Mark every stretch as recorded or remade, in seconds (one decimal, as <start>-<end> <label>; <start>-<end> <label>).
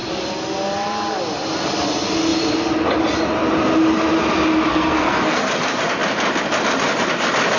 0.0-4.7 recorded; 4.7-5.5 remade; 5.5-7.6 recorded